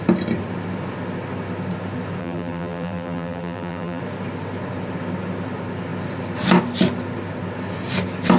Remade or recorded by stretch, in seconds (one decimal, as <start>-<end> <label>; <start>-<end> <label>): 0.0-2.2 recorded; 2.2-4.0 remade; 4.0-8.4 recorded